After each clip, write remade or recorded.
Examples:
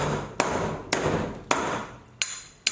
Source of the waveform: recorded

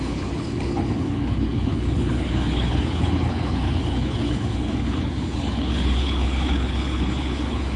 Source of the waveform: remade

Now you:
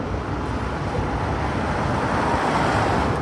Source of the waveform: recorded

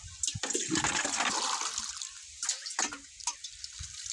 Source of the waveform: recorded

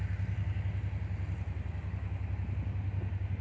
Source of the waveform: recorded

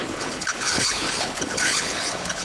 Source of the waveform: remade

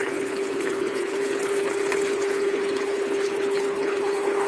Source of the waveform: remade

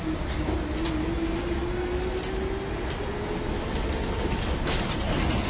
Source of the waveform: recorded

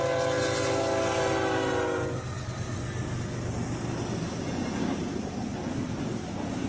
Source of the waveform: recorded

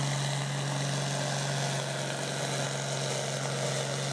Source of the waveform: recorded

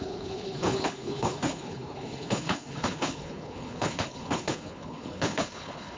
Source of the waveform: remade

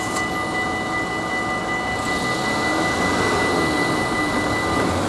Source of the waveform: recorded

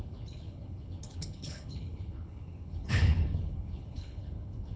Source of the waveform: remade